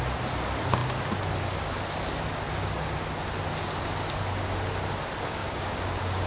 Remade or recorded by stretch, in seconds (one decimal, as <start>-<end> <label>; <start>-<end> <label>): 0.0-5.4 recorded; 5.4-6.3 remade

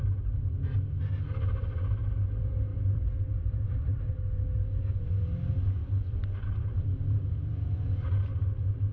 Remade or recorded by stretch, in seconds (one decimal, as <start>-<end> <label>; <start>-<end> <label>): 0.0-2.7 recorded; 2.7-4.1 remade; 4.1-5.8 recorded; 5.8-8.9 remade

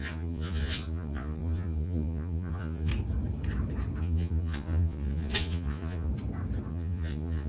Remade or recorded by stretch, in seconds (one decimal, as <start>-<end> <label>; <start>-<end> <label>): 0.0-2.9 remade; 2.9-4.0 recorded; 4.0-6.1 remade; 6.1-6.7 recorded; 6.7-7.5 remade